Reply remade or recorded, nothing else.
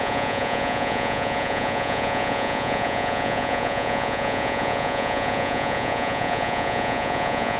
remade